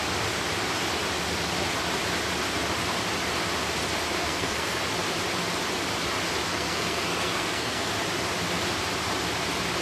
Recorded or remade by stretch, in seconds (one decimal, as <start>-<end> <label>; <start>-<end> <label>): 0.0-4.2 recorded; 4.2-4.8 remade; 4.8-6.5 recorded; 6.5-7.9 remade; 7.9-9.8 recorded